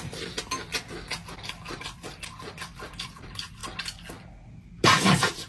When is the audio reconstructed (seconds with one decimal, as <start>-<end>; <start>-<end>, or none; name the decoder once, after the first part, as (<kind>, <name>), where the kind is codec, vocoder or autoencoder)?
0.0-0.7 (vocoder, BigVGAN v2); 1.7-3.6; 4.6-5.5